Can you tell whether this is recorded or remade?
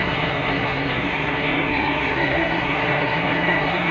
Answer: remade